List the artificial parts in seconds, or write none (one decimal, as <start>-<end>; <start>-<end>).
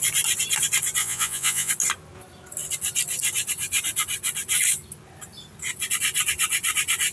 1.0-1.7